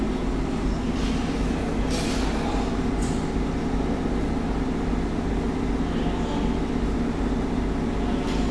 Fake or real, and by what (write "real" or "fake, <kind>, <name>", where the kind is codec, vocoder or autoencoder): real